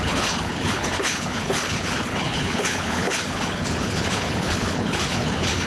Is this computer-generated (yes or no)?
yes